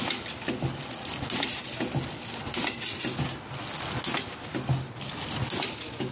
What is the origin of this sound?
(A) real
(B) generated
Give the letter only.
A